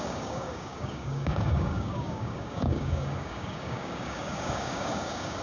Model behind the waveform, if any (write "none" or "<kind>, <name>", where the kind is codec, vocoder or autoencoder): codec, DAC